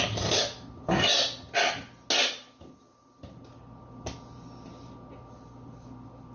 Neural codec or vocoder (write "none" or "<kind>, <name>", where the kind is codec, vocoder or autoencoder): none